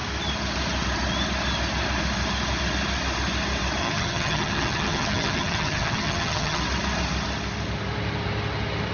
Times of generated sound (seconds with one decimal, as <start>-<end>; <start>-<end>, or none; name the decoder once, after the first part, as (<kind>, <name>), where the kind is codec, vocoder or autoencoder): 3.8-6.6 (vocoder, HiFi-GAN)